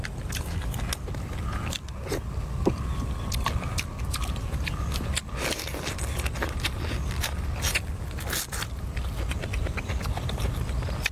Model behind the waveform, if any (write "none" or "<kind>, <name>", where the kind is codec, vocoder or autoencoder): none